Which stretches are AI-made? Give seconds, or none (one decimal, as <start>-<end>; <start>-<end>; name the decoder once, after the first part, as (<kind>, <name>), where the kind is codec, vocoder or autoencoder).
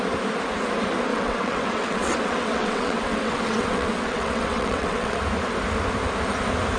1.1-5.2 (vocoder, WaveNeXt)